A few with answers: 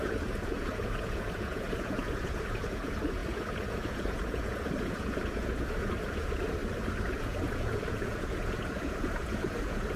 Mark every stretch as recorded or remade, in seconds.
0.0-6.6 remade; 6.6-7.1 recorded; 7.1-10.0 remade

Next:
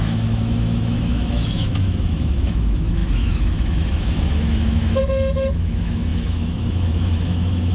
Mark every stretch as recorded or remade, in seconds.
0.0-7.7 remade

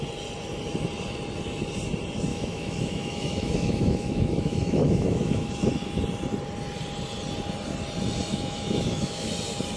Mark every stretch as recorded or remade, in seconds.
0.0-2.3 recorded; 2.3-5.5 remade; 5.5-8.3 recorded; 8.3-9.3 remade; 9.3-9.8 recorded

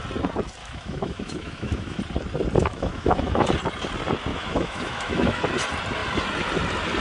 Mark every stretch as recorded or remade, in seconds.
0.0-0.6 recorded; 0.6-2.0 remade; 2.0-2.6 recorded; 2.6-3.5 remade; 3.5-4.3 recorded; 4.3-5.4 remade; 5.4-7.0 recorded

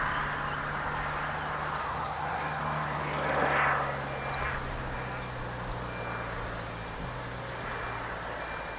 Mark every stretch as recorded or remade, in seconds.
0.0-1.8 recorded; 1.8-2.6 remade; 2.6-8.8 recorded

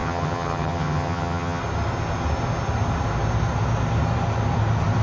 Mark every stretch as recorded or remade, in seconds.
0.0-1.6 remade; 1.6-5.0 recorded